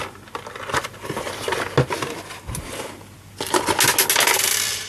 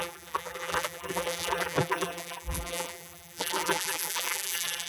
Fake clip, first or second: second